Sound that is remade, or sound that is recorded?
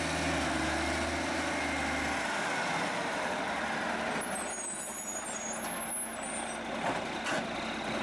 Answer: recorded